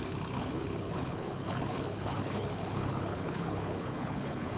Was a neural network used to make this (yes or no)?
yes